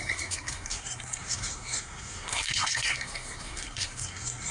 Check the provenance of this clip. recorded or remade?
remade